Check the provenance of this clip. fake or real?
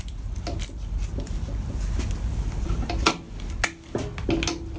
real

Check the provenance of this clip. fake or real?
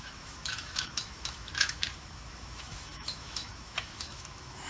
fake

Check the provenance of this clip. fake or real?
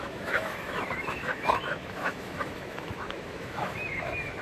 fake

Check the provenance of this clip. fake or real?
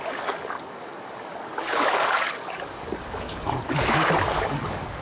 fake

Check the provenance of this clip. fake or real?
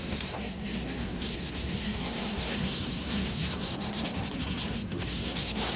fake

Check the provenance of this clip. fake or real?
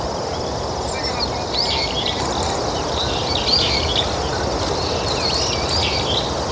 real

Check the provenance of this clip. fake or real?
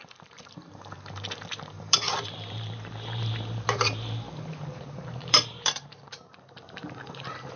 fake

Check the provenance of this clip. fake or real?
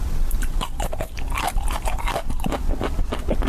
real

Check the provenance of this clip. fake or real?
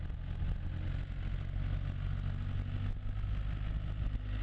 real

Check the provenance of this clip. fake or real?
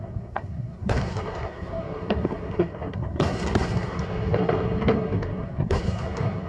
fake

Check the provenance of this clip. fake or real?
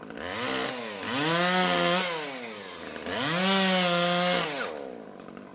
real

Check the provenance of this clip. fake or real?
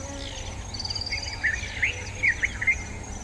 real